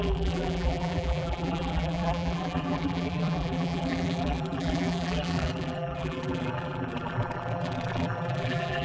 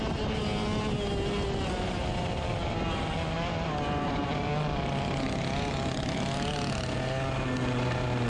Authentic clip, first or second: second